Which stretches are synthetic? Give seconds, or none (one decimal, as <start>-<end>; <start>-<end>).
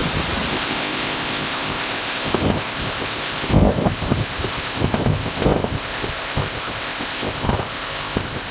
0.5-8.5